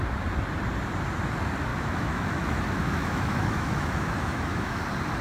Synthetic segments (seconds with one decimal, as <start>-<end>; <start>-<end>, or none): 1.7-4.8